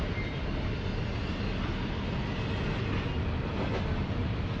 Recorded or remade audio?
recorded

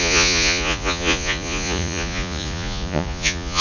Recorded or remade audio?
remade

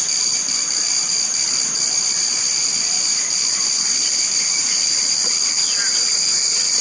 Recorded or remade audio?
remade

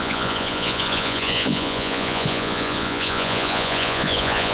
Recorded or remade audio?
remade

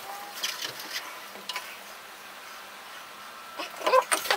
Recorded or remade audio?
recorded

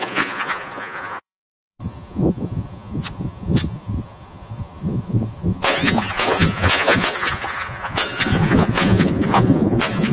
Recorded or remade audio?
remade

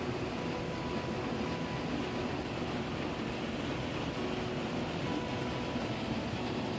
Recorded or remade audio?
recorded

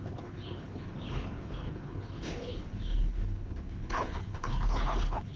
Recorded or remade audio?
remade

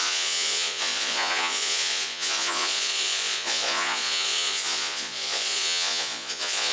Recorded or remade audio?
remade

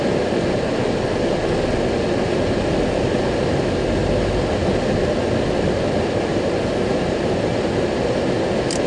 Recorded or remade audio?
recorded